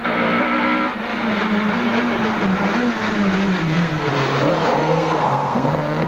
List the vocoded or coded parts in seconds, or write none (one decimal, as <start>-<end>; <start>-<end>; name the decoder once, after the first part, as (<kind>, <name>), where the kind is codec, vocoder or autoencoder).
3.6-4.1 (codec, SNAC); 4.8-6.1